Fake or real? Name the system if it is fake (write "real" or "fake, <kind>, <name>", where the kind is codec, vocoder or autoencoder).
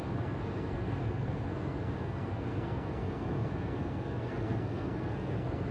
fake, codec, SNAC